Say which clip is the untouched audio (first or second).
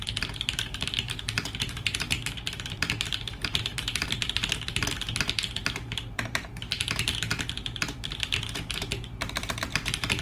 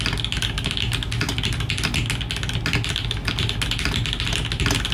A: second